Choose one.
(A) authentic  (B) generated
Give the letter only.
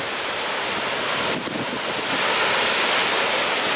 A